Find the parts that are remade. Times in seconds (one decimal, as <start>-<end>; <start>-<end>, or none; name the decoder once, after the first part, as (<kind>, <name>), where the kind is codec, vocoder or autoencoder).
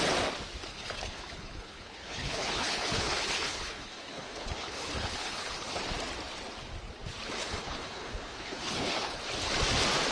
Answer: 0.7-5.8 (codec, HILCodec); 7.4-9.2